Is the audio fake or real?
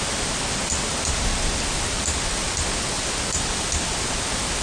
real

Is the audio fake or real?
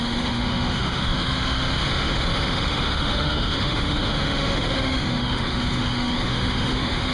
fake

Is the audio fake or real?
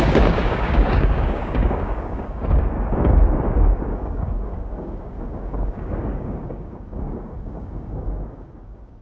fake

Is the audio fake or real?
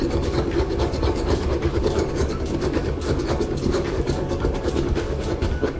fake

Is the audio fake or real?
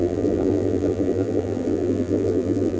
fake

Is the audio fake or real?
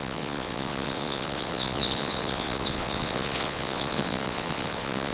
fake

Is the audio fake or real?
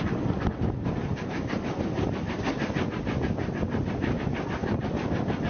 real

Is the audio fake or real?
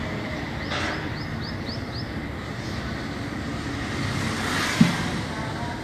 real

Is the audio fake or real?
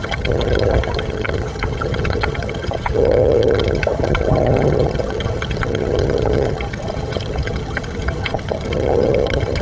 fake